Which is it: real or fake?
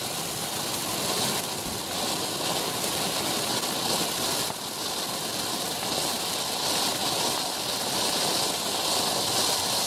real